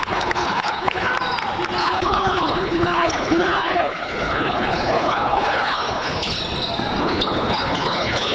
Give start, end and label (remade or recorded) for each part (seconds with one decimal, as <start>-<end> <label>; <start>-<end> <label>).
0.0-1.1 remade; 1.1-1.8 recorded; 1.8-6.4 remade; 6.4-7.0 recorded; 7.0-8.3 remade